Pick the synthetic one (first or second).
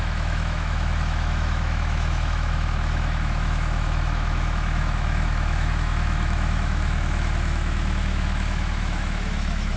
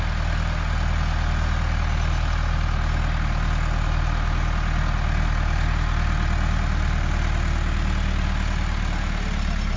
first